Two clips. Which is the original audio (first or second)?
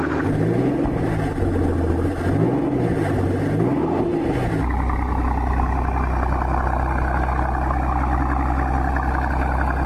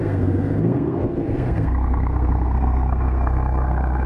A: first